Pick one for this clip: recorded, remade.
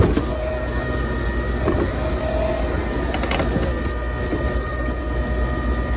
recorded